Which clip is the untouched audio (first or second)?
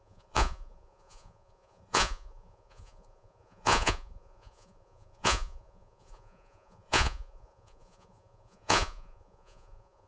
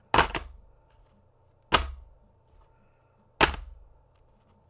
second